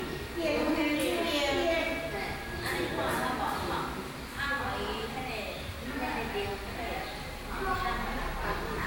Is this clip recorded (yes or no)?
yes